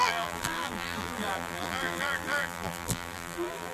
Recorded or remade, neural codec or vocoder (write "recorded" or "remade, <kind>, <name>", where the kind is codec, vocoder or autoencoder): remade, vocoder, BigVGAN v2